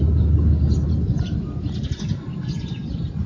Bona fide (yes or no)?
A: yes